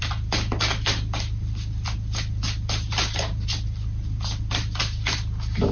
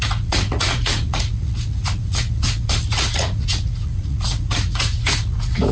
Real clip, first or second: first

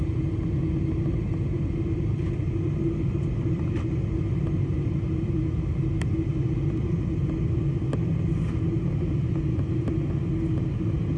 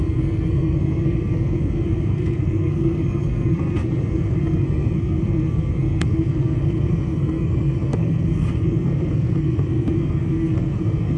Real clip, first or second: first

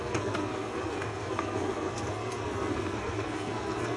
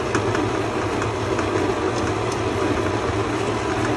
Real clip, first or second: second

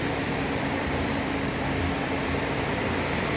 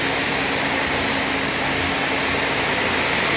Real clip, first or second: second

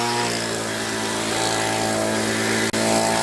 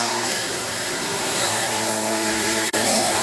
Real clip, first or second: first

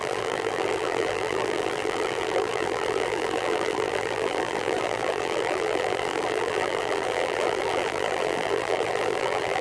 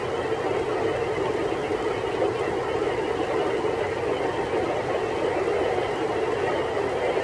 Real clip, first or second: second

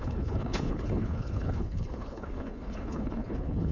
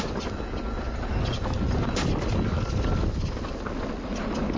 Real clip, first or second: second